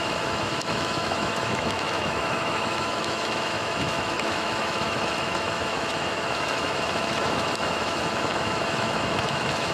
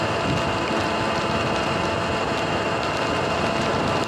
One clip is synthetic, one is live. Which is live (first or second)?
second